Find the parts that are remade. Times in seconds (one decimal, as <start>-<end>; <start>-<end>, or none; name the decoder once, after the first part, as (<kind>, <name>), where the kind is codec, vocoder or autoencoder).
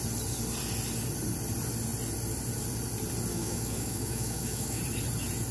3.3-4.8 (autoencoder, DAC-VAE)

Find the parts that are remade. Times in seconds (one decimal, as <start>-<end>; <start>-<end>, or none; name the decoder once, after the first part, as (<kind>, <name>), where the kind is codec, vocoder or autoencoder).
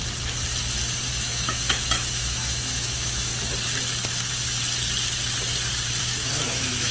1.1-3.3 (autoencoder, DAC-VAE); 6.0-6.9